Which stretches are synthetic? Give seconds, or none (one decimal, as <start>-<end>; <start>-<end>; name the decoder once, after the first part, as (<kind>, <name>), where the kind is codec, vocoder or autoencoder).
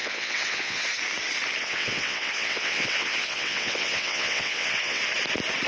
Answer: 0.0-0.9 (vocoder, WaveNeXt); 1.6-5.0